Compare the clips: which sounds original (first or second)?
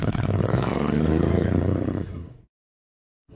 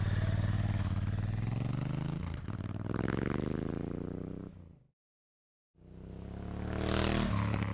second